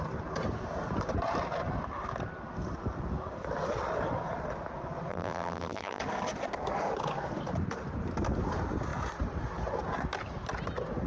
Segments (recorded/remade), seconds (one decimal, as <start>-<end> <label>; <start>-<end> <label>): 0.0-5.1 recorded; 5.1-6.0 remade; 6.0-11.1 recorded

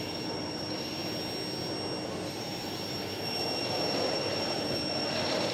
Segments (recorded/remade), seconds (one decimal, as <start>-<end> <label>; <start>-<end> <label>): 0.0-1.0 remade; 1.0-2.4 recorded; 2.4-5.5 remade

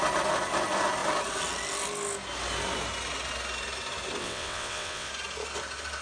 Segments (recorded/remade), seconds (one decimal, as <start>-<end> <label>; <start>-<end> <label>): 0.0-4.2 recorded; 4.2-5.1 remade; 5.1-6.0 recorded

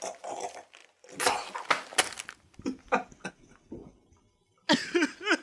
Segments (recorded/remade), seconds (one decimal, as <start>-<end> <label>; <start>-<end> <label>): 0.0-5.4 recorded

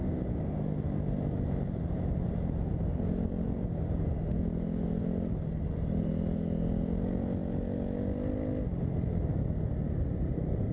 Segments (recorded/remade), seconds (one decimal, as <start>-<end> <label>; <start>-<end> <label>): 0.0-10.7 recorded

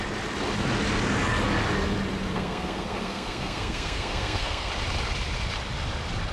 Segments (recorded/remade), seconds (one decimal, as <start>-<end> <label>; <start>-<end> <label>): 0.0-2.3 recorded; 2.3-4.7 remade; 4.7-6.3 recorded

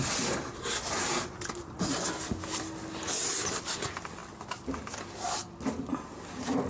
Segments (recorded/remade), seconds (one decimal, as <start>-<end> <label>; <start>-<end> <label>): 0.0-6.7 recorded

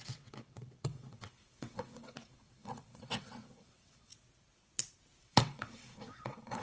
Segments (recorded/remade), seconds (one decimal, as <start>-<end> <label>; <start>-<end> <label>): 0.0-4.1 remade; 4.1-5.2 recorded; 5.2-6.6 remade